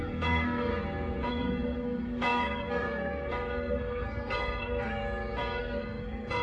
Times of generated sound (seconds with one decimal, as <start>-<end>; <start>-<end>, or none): 0.0-0.7; 1.3-5.0; 5.6-6.4